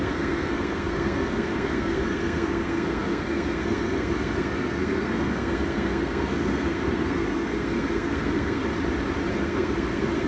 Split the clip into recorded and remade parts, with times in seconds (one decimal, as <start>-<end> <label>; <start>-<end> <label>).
0.0-8.6 remade; 8.6-9.3 recorded; 9.3-10.3 remade